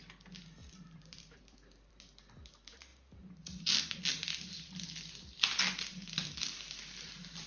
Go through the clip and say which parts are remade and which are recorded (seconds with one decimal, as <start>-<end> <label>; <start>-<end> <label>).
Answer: 0.0-0.6 recorded; 0.6-2.0 remade; 2.0-2.9 recorded; 2.9-5.1 remade; 5.1-5.9 recorded; 5.9-7.5 remade